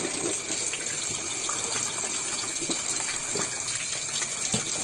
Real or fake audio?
real